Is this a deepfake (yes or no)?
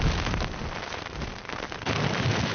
no